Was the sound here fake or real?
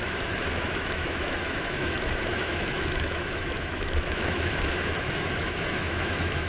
fake